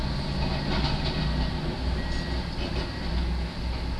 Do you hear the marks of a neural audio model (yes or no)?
no